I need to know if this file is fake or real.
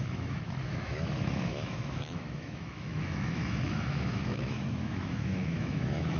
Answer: fake